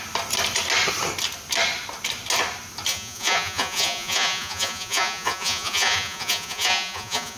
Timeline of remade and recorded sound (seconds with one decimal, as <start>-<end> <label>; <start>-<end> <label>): 0.0-2.9 recorded; 2.9-7.4 remade